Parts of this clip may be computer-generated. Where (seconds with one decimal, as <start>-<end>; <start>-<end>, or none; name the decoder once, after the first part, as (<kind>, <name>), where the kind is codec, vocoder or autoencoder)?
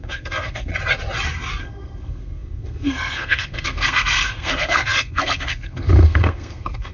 0.0-0.7 (codec, SNAC); 1.6-6.9